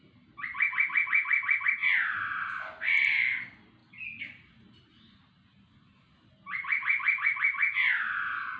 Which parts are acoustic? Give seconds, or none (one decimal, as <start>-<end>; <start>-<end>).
0.0-8.6